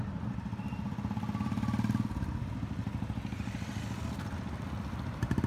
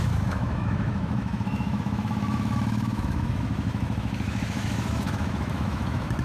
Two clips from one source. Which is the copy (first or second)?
second